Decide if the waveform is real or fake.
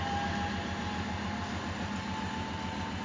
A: real